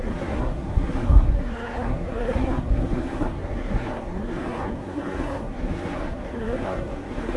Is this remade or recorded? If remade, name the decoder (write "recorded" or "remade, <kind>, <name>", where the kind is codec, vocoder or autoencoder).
remade, codec, SNAC